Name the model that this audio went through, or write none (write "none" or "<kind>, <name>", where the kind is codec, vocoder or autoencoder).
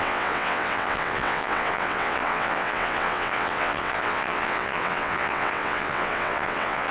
vocoder, WaveNeXt